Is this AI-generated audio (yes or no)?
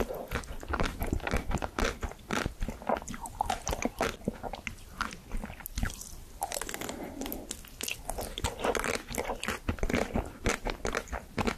no